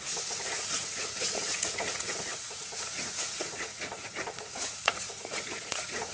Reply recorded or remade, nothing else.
remade